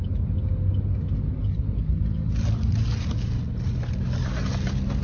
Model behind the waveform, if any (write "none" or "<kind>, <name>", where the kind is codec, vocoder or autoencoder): none